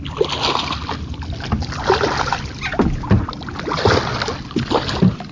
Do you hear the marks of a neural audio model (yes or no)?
no